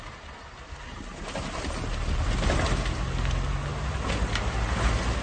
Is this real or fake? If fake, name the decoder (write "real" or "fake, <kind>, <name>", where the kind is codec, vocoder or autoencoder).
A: real